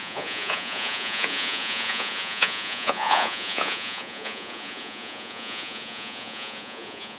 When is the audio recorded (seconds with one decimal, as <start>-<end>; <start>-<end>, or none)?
none